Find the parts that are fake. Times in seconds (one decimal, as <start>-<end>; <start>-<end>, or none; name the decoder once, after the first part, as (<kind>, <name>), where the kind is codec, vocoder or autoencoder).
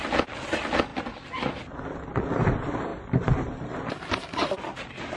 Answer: none